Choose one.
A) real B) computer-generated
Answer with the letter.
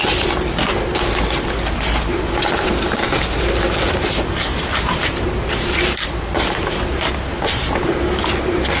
A